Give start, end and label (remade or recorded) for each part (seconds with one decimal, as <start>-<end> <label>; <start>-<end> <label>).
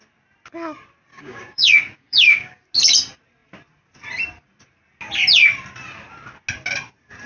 0.0-1.1 recorded; 1.1-2.6 remade; 2.6-7.3 recorded